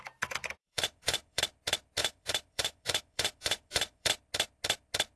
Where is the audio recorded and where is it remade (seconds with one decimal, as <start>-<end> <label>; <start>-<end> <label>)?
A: 0.0-0.6 recorded; 0.6-1.4 remade; 1.4-2.0 recorded; 2.0-4.1 remade; 4.1-5.2 recorded